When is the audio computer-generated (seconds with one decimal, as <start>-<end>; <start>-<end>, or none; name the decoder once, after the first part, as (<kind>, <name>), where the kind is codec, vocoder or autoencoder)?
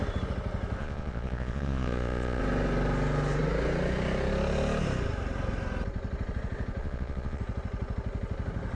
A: 0.8-2.4 (vocoder, Vocos); 6.8-7.4